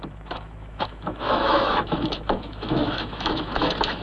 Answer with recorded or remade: remade